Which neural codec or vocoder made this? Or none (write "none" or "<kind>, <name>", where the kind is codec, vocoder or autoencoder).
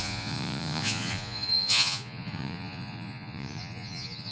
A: vocoder, Vocos